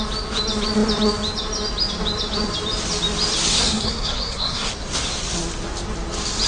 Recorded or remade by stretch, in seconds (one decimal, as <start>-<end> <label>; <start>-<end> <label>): 0.0-3.5 recorded; 3.5-4.7 remade; 4.7-6.5 recorded